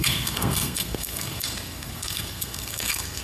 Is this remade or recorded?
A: remade